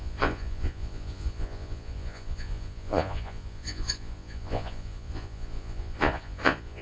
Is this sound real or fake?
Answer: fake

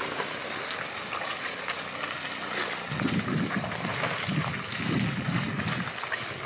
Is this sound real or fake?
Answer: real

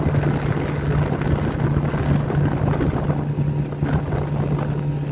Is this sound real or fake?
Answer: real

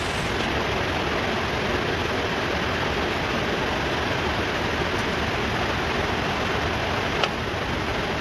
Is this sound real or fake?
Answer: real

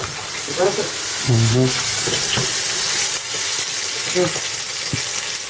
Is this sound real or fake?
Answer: real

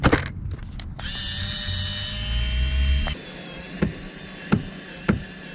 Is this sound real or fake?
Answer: real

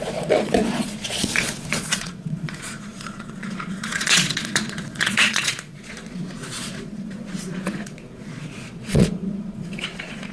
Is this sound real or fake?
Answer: fake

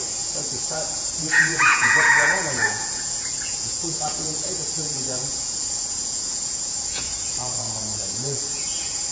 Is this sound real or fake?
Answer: fake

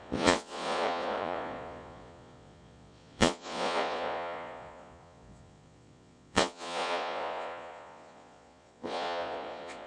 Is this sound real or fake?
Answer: fake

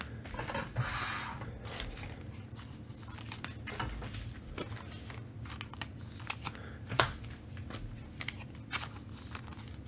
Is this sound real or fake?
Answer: real